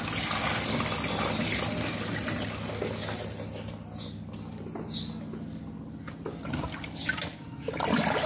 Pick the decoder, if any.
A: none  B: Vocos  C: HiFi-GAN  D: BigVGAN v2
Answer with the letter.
A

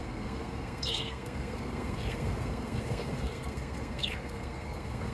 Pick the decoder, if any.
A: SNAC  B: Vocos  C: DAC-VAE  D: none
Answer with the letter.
A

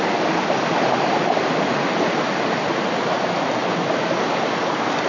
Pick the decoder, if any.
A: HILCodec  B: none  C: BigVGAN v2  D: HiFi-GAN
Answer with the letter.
B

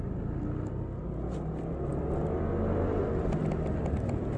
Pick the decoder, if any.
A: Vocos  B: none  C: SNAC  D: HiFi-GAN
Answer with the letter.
B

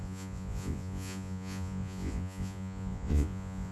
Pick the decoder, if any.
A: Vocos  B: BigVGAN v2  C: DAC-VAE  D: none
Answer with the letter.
A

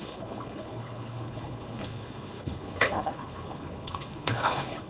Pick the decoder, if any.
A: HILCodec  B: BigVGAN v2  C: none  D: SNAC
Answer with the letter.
A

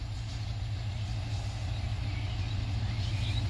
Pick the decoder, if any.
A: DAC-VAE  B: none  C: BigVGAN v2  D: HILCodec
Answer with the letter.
B